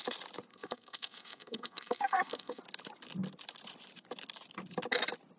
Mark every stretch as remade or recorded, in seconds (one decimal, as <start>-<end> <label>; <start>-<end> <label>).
0.0-0.5 recorded; 0.5-2.6 remade; 2.6-5.4 recorded